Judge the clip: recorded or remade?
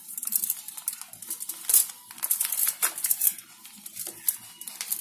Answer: recorded